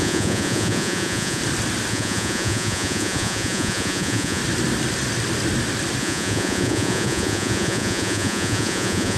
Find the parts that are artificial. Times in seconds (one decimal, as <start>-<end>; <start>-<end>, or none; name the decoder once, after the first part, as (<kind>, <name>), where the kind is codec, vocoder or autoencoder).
0.0-1.4 (vocoder, Vocos); 1.9-4.4; 6.0-9.2